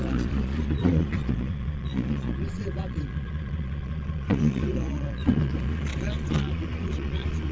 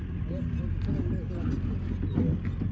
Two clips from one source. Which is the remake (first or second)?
first